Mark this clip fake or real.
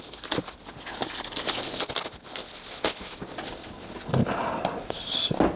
real